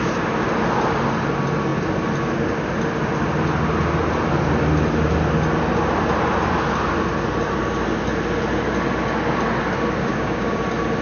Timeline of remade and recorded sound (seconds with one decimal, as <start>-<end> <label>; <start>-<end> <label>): 0.0-10.0 recorded; 10.0-10.6 remade; 10.6-11.0 recorded